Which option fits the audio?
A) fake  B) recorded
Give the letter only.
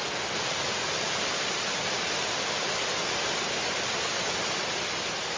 B